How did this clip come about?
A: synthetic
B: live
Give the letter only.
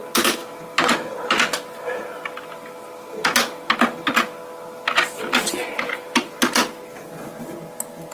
B